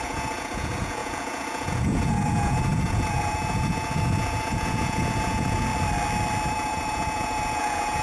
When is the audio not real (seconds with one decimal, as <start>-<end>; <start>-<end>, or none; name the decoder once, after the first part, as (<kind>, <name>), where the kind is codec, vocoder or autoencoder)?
0.0-5.7 (vocoder, Vocos); 6.5-8.0